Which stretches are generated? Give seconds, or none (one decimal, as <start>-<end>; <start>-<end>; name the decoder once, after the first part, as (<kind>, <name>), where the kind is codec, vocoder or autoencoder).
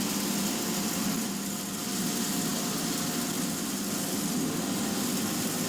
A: none